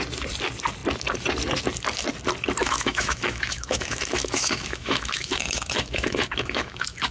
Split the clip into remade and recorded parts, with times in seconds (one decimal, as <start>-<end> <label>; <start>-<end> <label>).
0.0-2.6 recorded; 2.6-7.1 remade